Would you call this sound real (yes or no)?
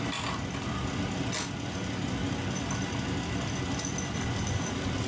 yes